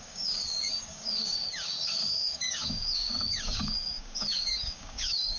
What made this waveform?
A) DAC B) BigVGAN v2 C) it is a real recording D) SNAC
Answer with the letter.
A